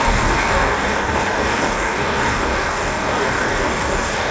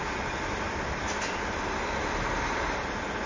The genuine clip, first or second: second